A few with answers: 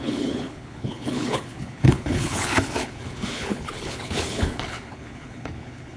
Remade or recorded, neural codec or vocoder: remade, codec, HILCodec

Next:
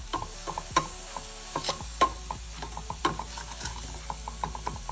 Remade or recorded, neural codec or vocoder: recorded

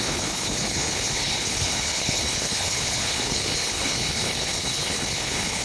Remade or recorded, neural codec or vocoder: remade, codec, HILCodec